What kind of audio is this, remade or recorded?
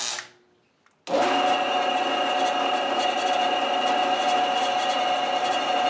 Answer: recorded